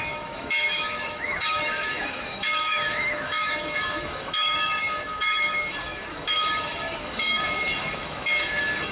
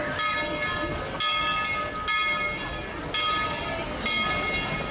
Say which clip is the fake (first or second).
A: first